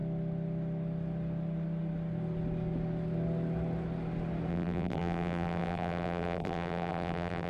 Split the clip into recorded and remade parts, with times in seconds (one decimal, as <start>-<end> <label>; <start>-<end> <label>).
0.0-4.5 recorded; 4.5-7.5 remade

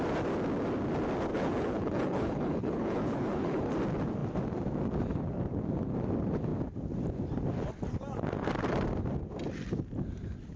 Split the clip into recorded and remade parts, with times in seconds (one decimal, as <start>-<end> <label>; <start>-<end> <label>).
0.0-1.3 recorded; 1.3-3.7 remade; 3.7-10.6 recorded

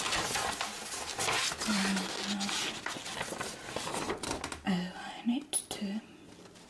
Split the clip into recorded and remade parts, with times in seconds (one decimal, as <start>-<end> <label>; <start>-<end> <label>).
0.0-6.7 recorded

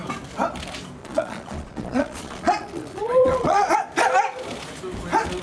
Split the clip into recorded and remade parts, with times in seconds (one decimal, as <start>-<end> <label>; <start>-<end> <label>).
0.0-1.0 recorded; 1.0-3.7 remade; 3.7-5.4 recorded